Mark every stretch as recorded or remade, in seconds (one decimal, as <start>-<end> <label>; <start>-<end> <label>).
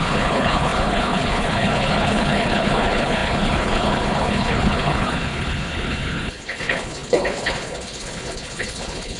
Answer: 0.0-9.2 remade